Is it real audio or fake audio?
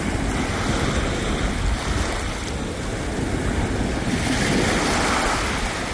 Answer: real